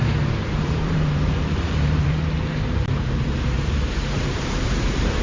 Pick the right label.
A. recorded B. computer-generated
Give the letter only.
B